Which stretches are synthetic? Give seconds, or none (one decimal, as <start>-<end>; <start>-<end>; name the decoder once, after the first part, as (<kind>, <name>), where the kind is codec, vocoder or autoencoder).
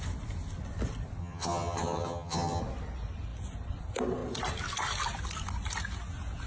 1.2-2.6 (vocoder, HiFi-GAN)